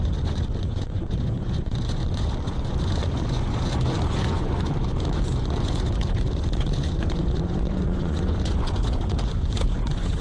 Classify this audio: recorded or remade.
remade